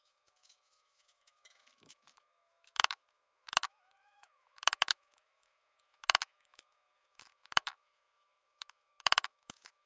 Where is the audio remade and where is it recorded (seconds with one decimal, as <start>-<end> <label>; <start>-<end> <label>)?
0.0-9.9 remade